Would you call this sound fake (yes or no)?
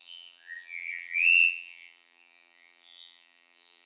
yes